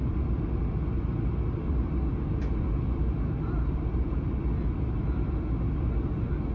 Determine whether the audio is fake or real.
real